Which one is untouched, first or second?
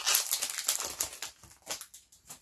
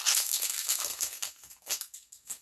first